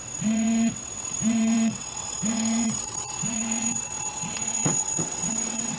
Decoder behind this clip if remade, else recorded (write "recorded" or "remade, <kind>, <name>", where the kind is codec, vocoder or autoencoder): remade, vocoder, WaveNeXt